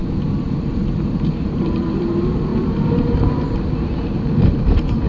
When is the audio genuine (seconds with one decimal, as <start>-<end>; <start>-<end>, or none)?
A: none